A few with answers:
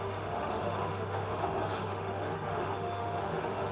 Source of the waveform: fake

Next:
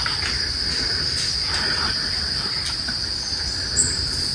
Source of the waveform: real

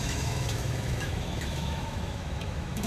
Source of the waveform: fake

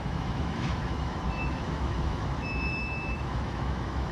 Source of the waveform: fake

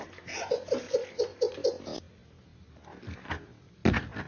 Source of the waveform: real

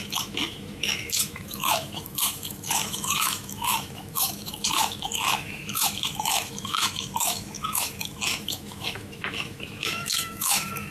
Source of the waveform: fake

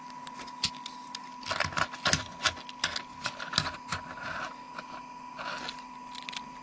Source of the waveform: real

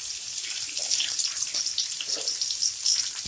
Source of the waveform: real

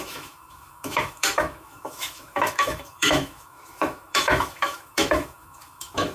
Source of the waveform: fake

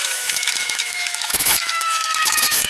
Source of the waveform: fake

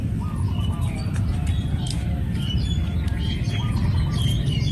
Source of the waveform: real